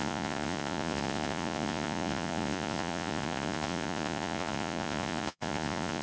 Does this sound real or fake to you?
fake